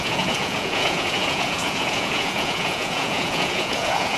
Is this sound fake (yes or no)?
yes